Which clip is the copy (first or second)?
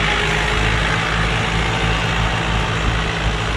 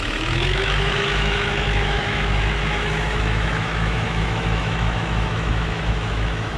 second